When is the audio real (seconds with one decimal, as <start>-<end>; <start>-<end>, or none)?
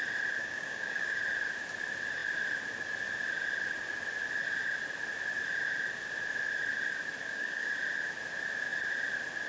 0.0-0.4; 1.2-7.2; 7.7-9.5